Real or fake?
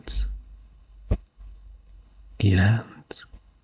fake